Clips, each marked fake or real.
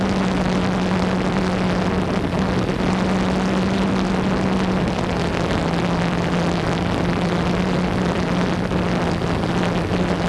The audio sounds real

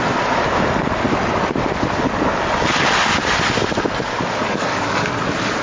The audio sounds real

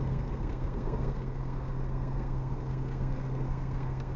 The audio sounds fake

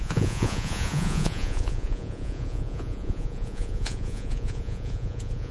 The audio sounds fake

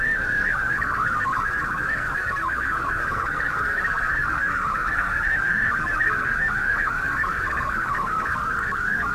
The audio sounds fake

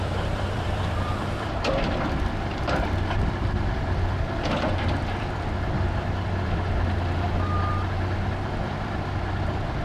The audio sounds fake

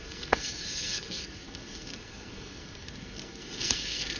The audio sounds fake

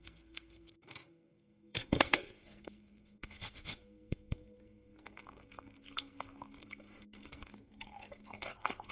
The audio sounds fake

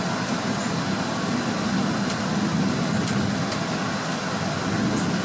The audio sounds real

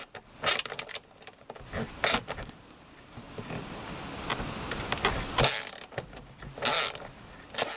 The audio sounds real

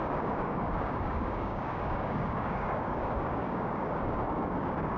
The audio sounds fake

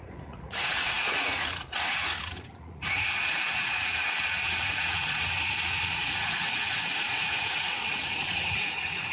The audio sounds fake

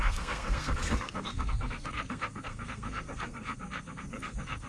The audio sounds fake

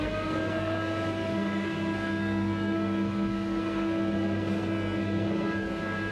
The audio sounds fake